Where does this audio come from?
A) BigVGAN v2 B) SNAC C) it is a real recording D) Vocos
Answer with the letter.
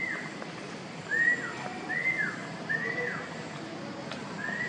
C